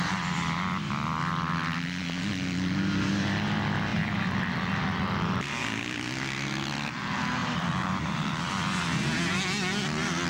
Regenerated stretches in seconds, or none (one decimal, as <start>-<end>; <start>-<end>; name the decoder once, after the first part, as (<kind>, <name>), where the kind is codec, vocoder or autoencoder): 7.4-8.5 (vocoder, BigVGAN v2)